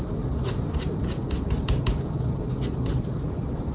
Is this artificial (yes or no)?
no